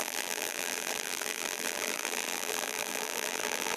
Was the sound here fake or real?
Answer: fake